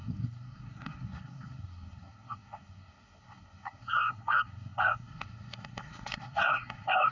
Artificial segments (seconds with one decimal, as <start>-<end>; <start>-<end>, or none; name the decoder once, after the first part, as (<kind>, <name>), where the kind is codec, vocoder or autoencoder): 0.0-7.1 (codec, SNAC)